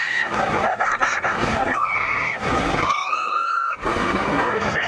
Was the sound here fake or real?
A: fake